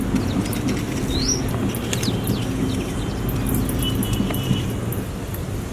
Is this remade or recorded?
recorded